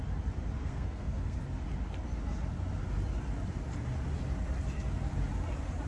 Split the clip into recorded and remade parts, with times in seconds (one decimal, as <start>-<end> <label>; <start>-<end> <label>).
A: 0.0-0.6 recorded; 0.6-1.4 remade; 1.4-5.9 recorded